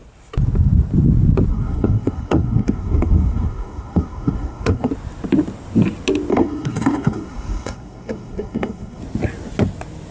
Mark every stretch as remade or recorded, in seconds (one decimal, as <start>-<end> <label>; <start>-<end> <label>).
0.0-1.5 recorded; 1.5-4.9 remade; 4.9-6.3 recorded; 6.3-9.0 remade; 9.0-10.1 recorded